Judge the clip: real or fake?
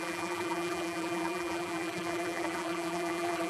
fake